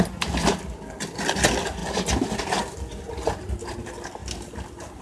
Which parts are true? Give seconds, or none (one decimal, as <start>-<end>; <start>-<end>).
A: 0.0-5.0